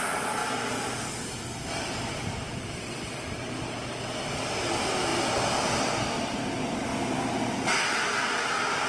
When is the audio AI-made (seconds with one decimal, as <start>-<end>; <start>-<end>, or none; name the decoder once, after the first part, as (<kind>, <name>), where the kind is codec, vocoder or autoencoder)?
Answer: none